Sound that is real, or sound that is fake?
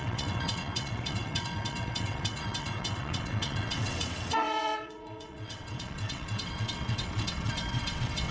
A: fake